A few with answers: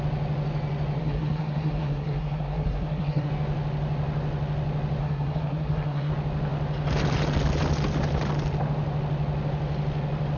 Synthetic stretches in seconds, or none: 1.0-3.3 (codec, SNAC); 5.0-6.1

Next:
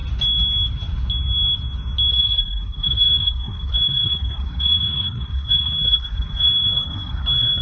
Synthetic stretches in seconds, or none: 2.1-7.6 (codec, SNAC)

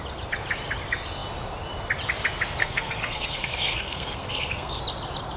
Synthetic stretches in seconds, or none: 2.6-4.8 (codec, SNAC)

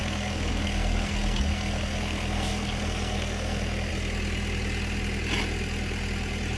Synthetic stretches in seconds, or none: 0.0-3.9 (codec, SNAC)

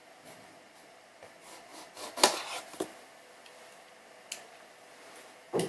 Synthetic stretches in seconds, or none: none

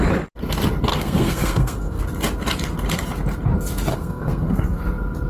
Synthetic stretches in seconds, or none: 0.9-2.0 (codec, SNAC); 3.9-4.8

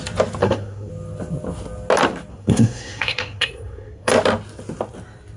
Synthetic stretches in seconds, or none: 0.4-0.9 (codec, SNAC); 2.3-4.1